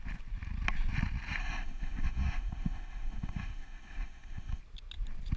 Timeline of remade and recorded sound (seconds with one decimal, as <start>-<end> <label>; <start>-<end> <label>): 0.0-1.4 recorded; 1.4-4.6 remade; 4.6-5.4 recorded